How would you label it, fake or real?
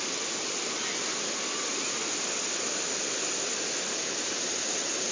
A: real